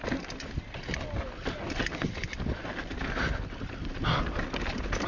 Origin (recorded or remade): recorded